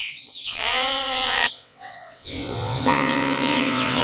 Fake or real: fake